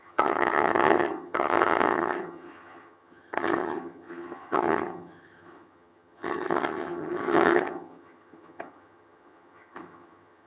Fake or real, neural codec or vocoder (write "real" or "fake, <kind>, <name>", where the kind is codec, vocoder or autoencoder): fake, vocoder, HiFi-GAN